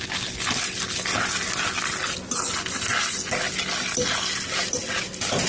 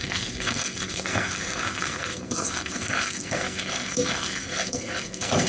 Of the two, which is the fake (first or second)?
second